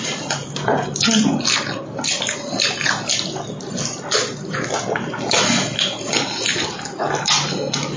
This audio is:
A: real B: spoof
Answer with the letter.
A